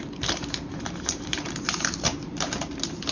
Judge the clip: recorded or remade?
remade